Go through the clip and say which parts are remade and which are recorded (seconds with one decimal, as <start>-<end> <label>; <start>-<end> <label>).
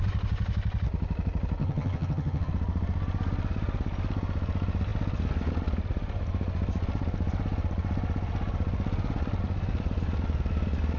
0.0-1.6 recorded; 1.6-2.5 remade; 2.5-11.0 recorded